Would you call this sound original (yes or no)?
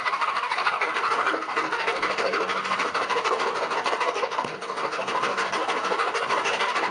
no